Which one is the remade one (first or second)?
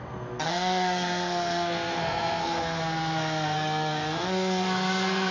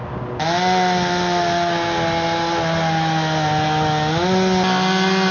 first